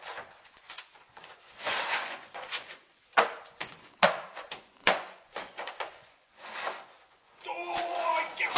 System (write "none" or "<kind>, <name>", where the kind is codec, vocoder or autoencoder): vocoder, Vocos